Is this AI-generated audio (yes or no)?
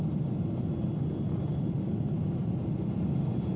no